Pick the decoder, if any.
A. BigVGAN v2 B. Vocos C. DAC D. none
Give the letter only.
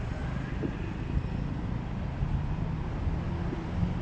D